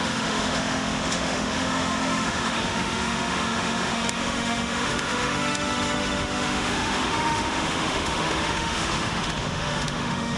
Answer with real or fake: fake